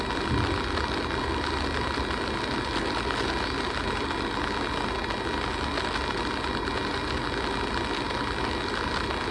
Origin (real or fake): real